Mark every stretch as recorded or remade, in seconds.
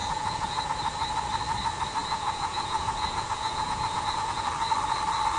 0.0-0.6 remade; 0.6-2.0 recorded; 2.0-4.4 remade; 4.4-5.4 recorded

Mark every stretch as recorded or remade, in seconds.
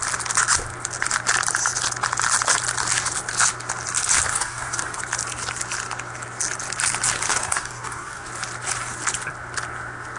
0.0-4.3 recorded; 4.3-5.0 remade; 5.0-7.3 recorded; 7.3-8.3 remade; 8.3-10.2 recorded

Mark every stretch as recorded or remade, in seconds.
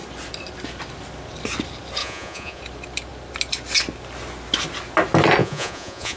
0.0-2.0 recorded; 2.0-2.6 remade; 2.6-5.4 recorded; 5.4-6.2 remade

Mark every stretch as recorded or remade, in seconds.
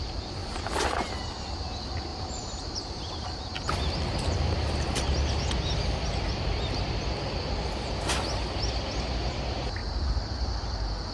0.0-0.4 recorded; 0.4-1.1 remade; 1.1-2.1 recorded; 2.1-5.4 remade; 5.4-11.1 recorded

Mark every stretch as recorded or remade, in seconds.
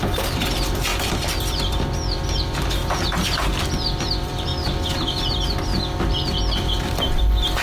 0.0-2.8 remade; 2.8-3.6 recorded; 3.6-4.5 remade; 4.5-7.6 recorded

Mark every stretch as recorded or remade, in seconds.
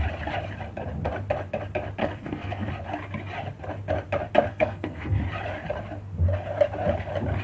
0.0-2.0 recorded; 2.0-2.7 remade; 2.7-4.5 recorded; 4.5-5.2 remade; 5.2-7.4 recorded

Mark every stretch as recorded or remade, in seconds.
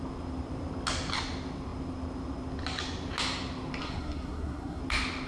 0.0-3.8 recorded; 3.8-4.8 remade; 4.8-5.3 recorded